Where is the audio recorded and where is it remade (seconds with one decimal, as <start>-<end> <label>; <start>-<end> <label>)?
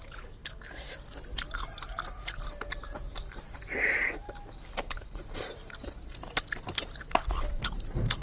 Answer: 0.0-5.6 remade; 5.6-7.4 recorded; 7.4-8.2 remade